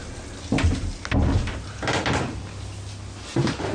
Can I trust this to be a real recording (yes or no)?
yes